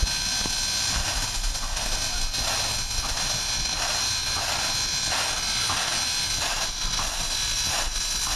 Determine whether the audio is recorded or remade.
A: recorded